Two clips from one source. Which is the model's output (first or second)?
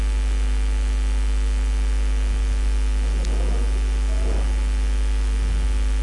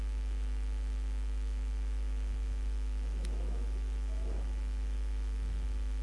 second